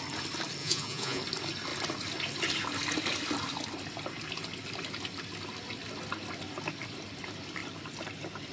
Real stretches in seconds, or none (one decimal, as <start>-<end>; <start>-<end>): 0.0-0.6; 1.2-8.5